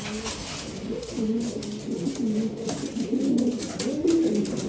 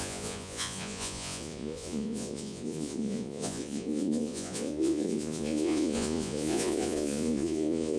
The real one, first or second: first